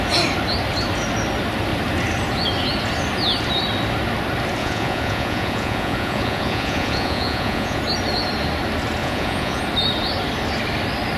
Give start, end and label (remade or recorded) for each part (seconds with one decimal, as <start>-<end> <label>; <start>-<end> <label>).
0.0-4.6 recorded; 4.6-7.8 remade; 7.8-9.0 recorded; 9.0-9.6 remade; 9.6-11.2 recorded